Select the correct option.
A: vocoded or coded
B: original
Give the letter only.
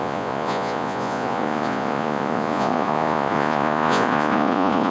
A